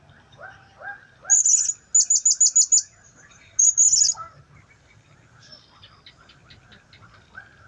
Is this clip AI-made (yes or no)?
no